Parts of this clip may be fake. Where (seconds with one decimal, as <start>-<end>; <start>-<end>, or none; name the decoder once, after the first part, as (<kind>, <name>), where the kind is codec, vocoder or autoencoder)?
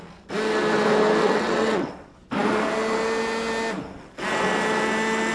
1.2-1.9 (vocoder, WaveNeXt)